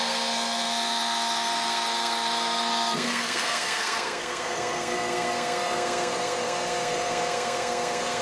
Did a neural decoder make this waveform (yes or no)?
yes